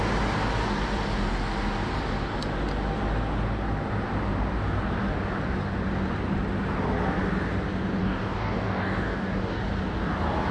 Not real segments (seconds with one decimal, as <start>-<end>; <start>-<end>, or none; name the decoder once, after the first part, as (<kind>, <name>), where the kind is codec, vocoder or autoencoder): 8.0-9.6 (codec, DAC)